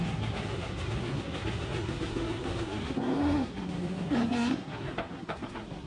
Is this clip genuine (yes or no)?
no